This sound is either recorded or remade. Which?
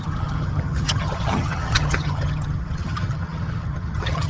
remade